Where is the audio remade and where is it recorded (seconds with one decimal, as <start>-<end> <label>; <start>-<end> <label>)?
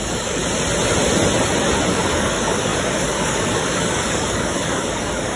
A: 0.0-0.4 remade; 0.4-1.9 recorded; 1.9-5.4 remade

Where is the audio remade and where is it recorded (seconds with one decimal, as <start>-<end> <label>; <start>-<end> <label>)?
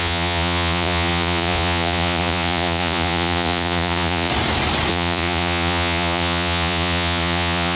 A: 0.0-4.3 remade; 4.3-4.9 recorded; 4.9-7.8 remade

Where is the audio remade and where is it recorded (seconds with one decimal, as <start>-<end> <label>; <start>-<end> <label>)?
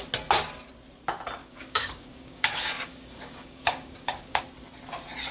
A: 0.0-1.4 recorded; 1.4-4.4 remade; 4.4-5.3 recorded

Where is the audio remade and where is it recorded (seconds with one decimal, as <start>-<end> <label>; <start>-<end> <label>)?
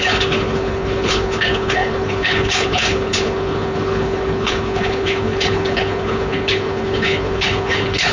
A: 0.0-8.1 remade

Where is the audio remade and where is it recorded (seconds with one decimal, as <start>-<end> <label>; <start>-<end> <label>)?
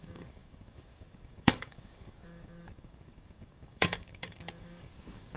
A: 0.0-5.4 remade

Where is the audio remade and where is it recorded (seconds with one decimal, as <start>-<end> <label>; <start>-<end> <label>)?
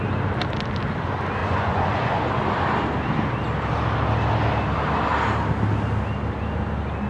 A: 0.0-1.4 recorded; 1.4-2.2 remade; 2.2-7.1 recorded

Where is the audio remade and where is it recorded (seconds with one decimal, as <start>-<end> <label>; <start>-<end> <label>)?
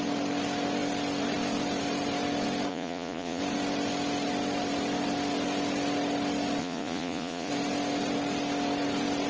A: 0.0-2.7 recorded; 2.7-3.4 remade; 3.4-6.6 recorded; 6.6-7.5 remade; 7.5-9.3 recorded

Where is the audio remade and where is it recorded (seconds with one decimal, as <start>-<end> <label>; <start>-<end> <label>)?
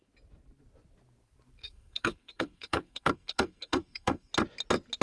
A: 0.0-1.6 recorded; 1.6-4.3 remade; 4.3-5.0 recorded